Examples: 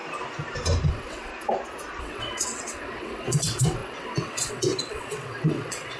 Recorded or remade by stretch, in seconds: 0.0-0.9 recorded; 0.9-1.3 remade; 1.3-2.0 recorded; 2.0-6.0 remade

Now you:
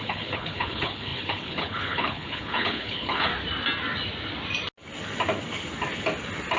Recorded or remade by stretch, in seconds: 0.0-3.3 remade; 3.3-6.6 recorded

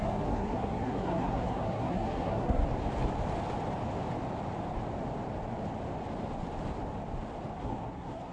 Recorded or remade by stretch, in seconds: 0.0-2.6 remade; 2.6-7.6 recorded; 7.6-8.3 remade

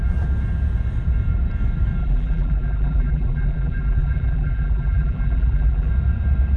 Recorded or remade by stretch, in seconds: 0.0-2.0 recorded; 2.0-5.9 remade; 5.9-6.6 recorded

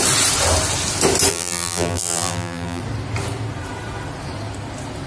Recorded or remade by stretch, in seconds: 0.0-1.3 recorded; 1.3-2.8 remade; 2.8-5.1 recorded

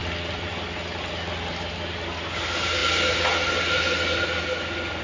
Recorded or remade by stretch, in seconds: 0.0-5.0 recorded